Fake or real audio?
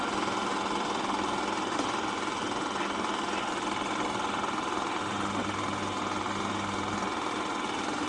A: real